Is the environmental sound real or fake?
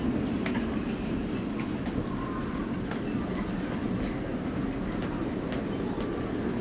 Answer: real